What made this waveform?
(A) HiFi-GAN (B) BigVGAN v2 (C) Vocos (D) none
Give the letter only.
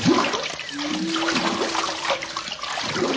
D